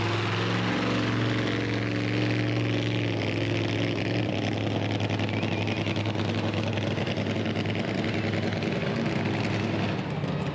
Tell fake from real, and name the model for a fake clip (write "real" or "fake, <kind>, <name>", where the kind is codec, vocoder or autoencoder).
real